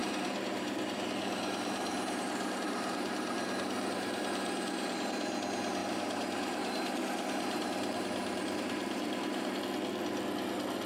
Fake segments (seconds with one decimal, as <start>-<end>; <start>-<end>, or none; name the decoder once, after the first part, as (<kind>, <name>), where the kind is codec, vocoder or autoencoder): 0.0-5.1 (vocoder, BigVGAN v2); 5.8-9.6